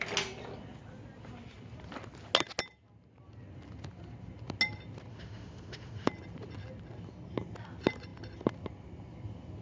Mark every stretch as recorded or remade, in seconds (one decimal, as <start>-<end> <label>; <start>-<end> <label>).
0.0-5.1 recorded; 5.1-6.1 remade; 6.1-9.6 recorded